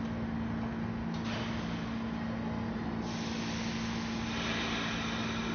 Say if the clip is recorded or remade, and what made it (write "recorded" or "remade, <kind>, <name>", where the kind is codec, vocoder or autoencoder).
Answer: recorded